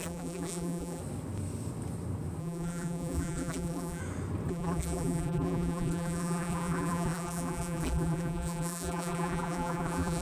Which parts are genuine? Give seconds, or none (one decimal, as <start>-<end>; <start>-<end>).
1.0-2.4; 4.0-4.5